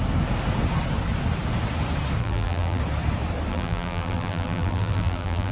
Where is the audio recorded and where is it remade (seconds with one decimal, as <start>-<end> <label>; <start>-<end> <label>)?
0.0-2.2 recorded; 2.2-2.8 remade; 2.8-3.5 recorded; 3.5-5.5 remade

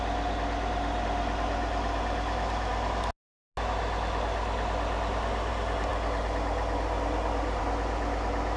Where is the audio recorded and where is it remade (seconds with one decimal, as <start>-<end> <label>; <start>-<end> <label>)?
0.0-8.6 recorded

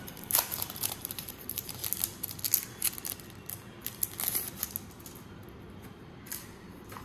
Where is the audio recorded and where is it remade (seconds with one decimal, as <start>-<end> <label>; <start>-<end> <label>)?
0.0-1.8 remade; 1.8-6.0 recorded; 6.0-7.0 remade

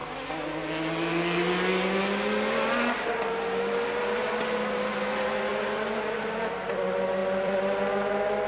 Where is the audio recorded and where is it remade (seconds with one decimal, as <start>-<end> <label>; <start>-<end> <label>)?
0.0-5.5 recorded; 5.5-6.4 remade; 6.4-7.2 recorded; 7.2-8.5 remade